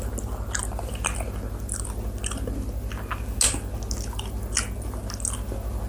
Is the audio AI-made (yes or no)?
no